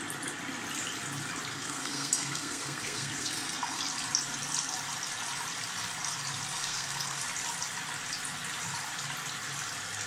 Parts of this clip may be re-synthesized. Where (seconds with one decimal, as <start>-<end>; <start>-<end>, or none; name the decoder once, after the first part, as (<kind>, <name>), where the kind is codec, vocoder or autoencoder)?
1.5-3.8 (codec, SNAC); 6.5-7.2